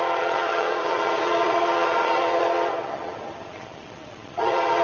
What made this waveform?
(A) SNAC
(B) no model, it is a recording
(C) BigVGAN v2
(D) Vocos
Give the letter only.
D